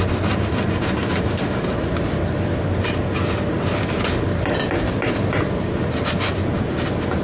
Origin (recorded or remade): remade